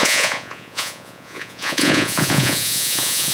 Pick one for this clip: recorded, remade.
remade